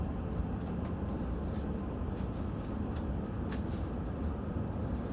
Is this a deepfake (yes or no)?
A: no